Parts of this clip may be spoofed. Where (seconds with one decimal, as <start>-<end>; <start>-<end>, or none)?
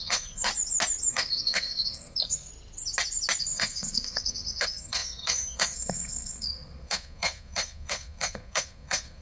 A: 0.0-0.5; 1.1-2.5; 3.4-9.2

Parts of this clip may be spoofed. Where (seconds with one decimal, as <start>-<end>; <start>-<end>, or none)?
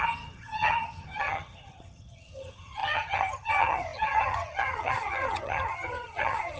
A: 0.0-6.6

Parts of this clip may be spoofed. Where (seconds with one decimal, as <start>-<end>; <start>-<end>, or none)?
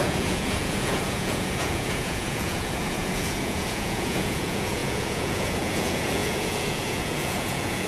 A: 0.0-7.9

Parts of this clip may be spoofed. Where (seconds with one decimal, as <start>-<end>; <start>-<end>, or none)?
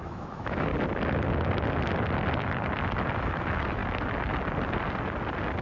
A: 0.0-0.7; 3.2-3.8